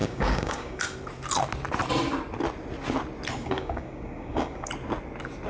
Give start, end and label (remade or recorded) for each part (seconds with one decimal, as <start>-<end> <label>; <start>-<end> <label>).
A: 0.0-0.8 remade; 0.8-3.4 recorded; 3.4-4.7 remade; 4.7-5.5 recorded